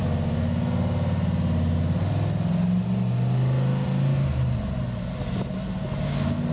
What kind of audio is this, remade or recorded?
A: recorded